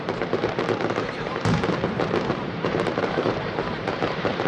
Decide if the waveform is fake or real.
fake